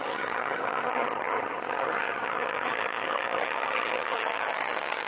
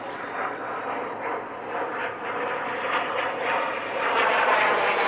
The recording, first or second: second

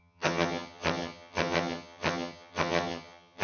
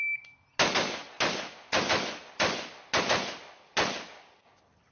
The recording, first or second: second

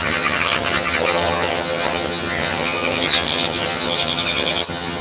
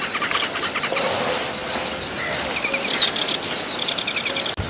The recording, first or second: second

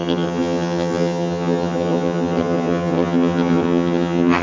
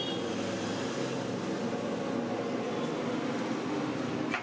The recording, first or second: second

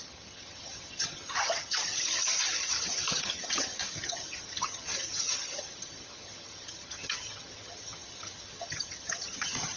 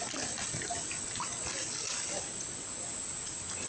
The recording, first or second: second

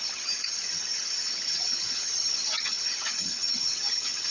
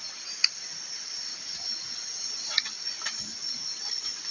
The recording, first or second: second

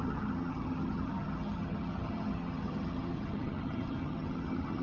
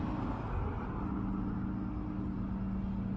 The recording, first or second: second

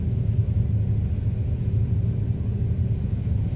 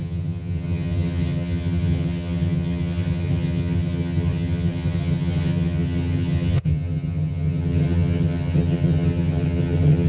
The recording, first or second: first